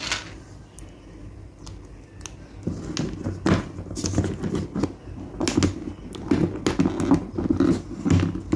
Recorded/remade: recorded